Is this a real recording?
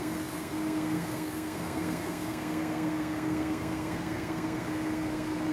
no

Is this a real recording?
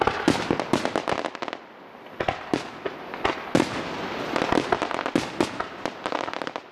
yes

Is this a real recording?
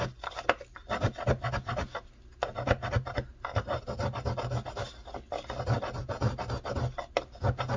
yes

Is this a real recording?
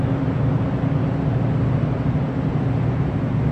yes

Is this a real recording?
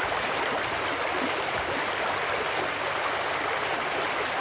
yes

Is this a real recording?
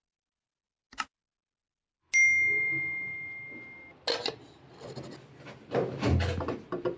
yes